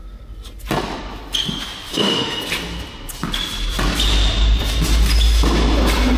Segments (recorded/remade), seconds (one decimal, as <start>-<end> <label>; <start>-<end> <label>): 0.0-1.9 recorded; 1.9-2.4 remade; 2.4-6.2 recorded